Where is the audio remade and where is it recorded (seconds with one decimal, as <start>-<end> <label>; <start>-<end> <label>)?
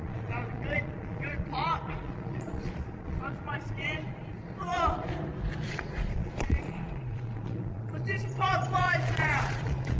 0.0-5.1 remade; 5.1-5.7 recorded; 5.7-10.0 remade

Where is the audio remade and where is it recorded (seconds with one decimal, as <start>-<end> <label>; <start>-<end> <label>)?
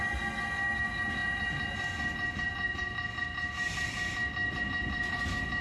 0.0-5.6 recorded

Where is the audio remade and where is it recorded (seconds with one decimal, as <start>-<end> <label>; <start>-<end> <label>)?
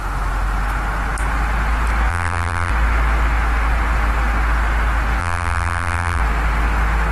0.0-2.1 recorded; 2.1-2.7 remade; 2.7-5.2 recorded; 5.2-6.2 remade; 6.2-7.1 recorded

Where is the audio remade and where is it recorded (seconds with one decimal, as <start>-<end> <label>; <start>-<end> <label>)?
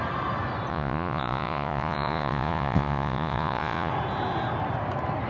0.0-0.7 recorded; 0.7-3.9 remade; 3.9-5.3 recorded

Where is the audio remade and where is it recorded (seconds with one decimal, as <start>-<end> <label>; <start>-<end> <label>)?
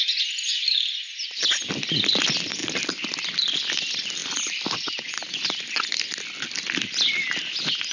0.0-7.9 recorded